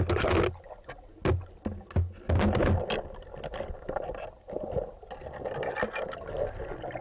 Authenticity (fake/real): real